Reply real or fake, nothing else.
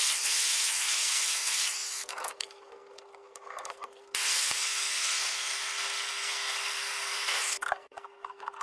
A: fake